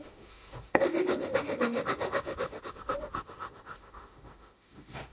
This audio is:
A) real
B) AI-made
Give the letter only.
B